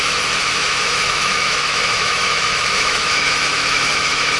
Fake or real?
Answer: fake